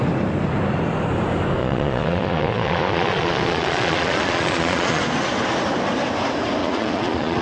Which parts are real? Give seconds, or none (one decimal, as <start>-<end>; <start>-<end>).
0.0-1.6; 5.0-6.6